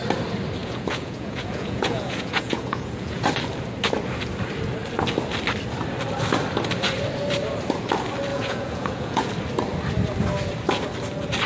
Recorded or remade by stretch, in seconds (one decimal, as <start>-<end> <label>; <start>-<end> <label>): 0.0-0.6 recorded; 0.6-3.2 remade; 3.2-8.3 recorded; 8.3-9.3 remade; 9.3-11.5 recorded

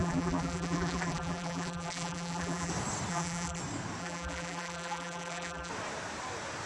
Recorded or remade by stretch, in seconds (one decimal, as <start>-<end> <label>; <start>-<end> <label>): 0.0-2.7 remade; 2.7-3.1 recorded; 3.1-3.6 remade; 3.6-4.0 recorded; 4.0-5.7 remade; 5.7-6.7 recorded

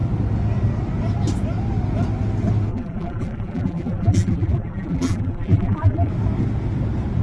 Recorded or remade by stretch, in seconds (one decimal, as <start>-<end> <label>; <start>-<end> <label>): 0.0-2.7 recorded; 2.7-6.1 remade; 6.1-7.2 recorded